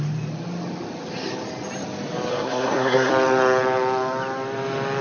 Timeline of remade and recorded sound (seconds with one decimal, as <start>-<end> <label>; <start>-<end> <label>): 0.0-2.3 recorded; 2.3-3.1 remade; 3.1-5.0 recorded